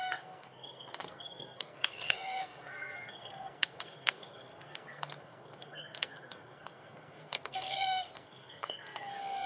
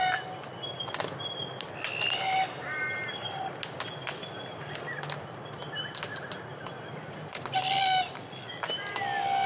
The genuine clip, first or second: second